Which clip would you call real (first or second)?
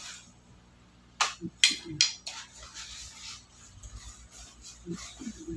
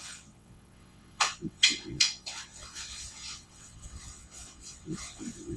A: first